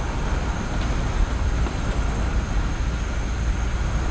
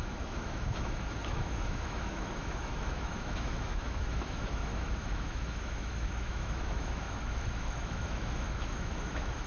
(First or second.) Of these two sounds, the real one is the first